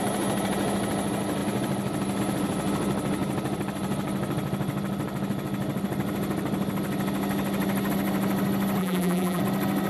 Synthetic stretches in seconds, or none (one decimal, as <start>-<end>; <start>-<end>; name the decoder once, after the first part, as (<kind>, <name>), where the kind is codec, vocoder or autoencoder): 8.8-9.4 (vocoder, BigVGAN v2)